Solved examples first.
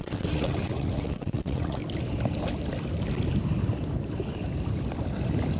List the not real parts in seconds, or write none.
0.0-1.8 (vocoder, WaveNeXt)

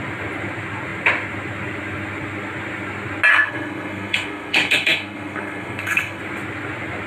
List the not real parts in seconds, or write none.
3.3-6.2 (codec, SNAC)

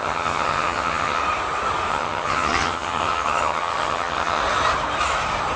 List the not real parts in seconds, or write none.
0.0-1.2 (vocoder, HiFi-GAN); 1.9-4.4

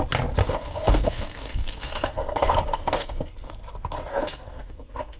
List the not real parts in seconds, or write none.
0.4-3.5 (codec, SNAC); 4.1-5.2